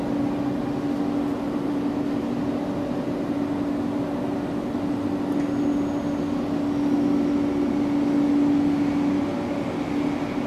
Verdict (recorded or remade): recorded